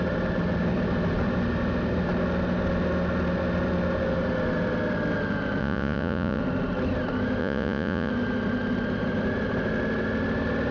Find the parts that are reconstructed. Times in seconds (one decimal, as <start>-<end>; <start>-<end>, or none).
5.6-6.4; 7.4-8.1